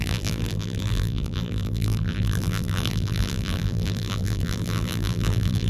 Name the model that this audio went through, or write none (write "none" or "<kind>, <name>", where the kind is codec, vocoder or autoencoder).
vocoder, BigVGAN v2